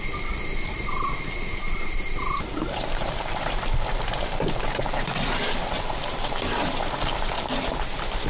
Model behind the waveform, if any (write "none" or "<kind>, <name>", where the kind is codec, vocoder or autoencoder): vocoder, BigVGAN v2